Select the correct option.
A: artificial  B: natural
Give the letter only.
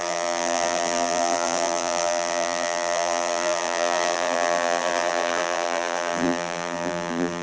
A